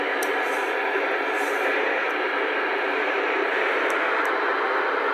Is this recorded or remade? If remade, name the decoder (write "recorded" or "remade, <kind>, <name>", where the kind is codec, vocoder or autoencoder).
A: remade, vocoder, BigVGAN v2